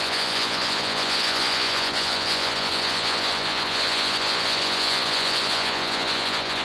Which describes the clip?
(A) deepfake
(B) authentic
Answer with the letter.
A